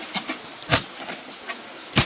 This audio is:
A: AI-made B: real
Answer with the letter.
B